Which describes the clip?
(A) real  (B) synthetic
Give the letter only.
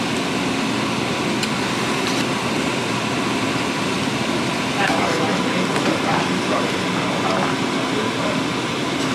A